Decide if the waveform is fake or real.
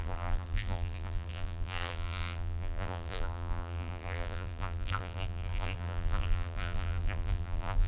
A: fake